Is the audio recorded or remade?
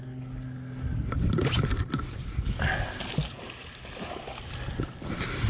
recorded